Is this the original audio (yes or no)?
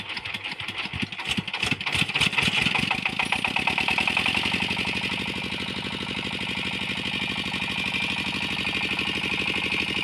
yes